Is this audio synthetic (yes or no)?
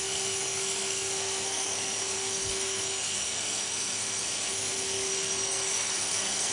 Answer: yes